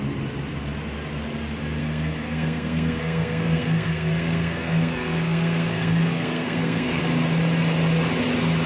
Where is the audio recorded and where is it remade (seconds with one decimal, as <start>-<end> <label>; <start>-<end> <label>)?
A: 0.0-1.8 recorded; 1.8-7.0 remade; 7.0-8.7 recorded